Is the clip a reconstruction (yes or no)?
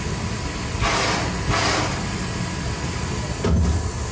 no